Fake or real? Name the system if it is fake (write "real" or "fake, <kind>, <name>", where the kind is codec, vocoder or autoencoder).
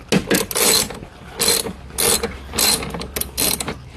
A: real